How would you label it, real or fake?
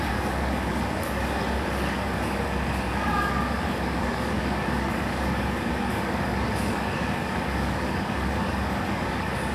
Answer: fake